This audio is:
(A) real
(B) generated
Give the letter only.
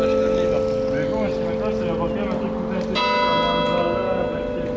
A